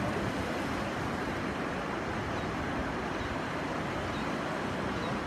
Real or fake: real